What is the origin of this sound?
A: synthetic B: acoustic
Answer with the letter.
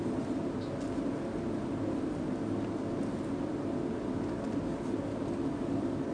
B